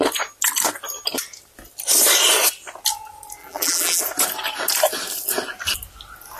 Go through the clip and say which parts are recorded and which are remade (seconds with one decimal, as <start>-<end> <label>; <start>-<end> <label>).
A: 0.0-3.4 recorded; 3.4-4.0 remade; 4.0-6.4 recorded